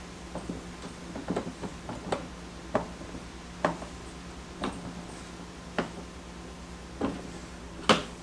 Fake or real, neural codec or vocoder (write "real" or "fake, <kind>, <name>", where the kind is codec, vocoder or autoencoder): real